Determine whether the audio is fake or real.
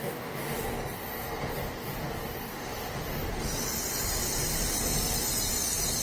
real